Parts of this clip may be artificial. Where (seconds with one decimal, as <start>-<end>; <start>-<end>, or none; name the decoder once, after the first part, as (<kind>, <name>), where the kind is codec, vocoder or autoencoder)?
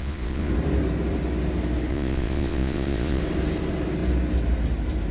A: 0.0-0.5 (vocoder, Vocos); 1.9-3.2